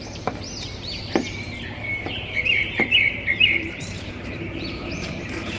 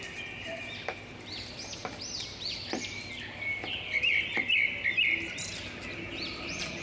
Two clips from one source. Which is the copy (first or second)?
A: first